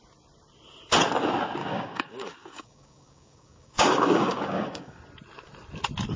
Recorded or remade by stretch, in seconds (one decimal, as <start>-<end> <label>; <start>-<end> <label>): 0.0-1.6 recorded; 1.6-5.0 remade; 5.0-6.2 recorded